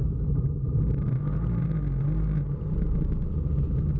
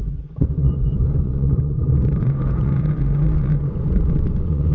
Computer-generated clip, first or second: second